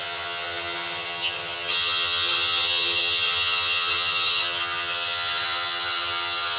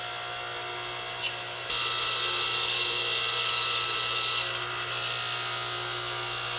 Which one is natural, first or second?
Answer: second